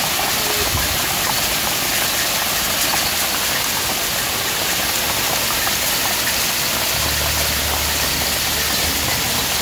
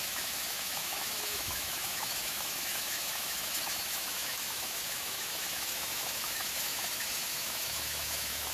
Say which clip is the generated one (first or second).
second